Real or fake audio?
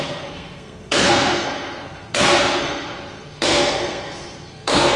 fake